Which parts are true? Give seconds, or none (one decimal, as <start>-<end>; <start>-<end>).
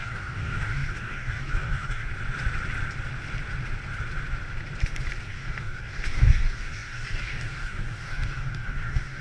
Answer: 2.1-5.3